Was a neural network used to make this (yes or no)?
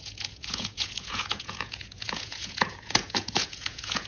yes